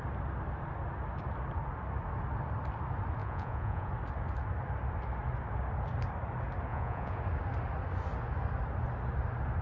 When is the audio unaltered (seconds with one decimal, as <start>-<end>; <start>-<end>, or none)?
0.0-3.2; 3.9-6.7; 7.2-9.6